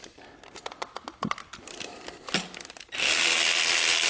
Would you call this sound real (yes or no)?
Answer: yes